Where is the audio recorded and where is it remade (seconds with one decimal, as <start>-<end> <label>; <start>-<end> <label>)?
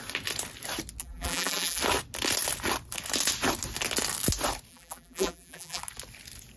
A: 0.0-1.0 recorded; 1.0-1.8 remade; 1.8-4.7 recorded; 4.7-5.8 remade; 5.8-6.6 recorded